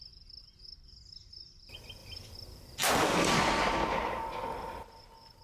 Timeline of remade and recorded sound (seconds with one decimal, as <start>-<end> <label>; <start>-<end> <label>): 0.0-2.0 recorded; 2.0-3.3 remade; 3.3-5.4 recorded